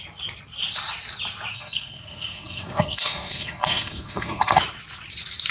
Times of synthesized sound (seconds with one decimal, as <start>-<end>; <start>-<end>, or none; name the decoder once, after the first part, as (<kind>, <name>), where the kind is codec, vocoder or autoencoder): 1.5-4.6 (codec, SNAC)